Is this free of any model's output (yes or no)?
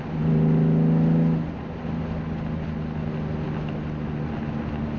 yes